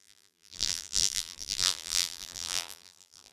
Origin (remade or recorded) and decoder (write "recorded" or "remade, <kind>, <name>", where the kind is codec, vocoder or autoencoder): remade, vocoder, BigVGAN v2